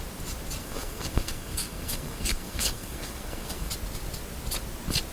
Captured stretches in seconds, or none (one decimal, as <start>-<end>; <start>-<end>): 0.0-0.6; 3.7-5.1